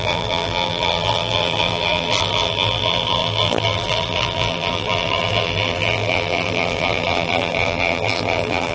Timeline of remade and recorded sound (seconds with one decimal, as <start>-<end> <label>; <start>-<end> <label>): 0.0-8.7 remade